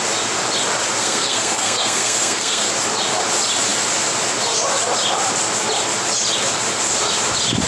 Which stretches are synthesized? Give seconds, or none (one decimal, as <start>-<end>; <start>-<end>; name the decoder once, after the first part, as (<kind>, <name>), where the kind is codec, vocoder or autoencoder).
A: 1.0-2.7 (codec, SNAC)